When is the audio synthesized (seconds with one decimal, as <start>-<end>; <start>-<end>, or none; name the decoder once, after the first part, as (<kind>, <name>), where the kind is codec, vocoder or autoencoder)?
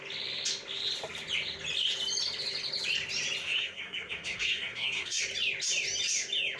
3.4-5.2 (codec, SNAC)